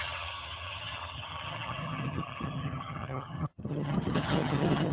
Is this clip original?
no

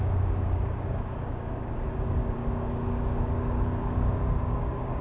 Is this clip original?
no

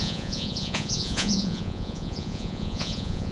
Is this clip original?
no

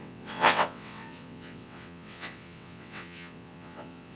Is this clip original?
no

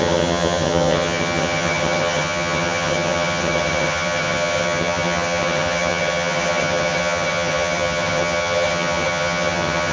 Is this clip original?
no